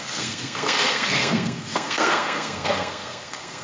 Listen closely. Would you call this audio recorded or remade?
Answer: remade